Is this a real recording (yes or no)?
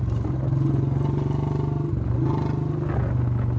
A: yes